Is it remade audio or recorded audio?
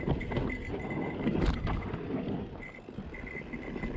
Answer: recorded